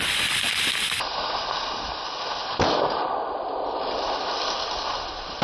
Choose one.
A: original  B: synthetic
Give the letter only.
A